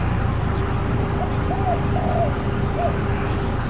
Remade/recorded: recorded